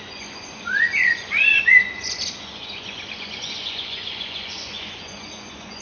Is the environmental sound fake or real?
fake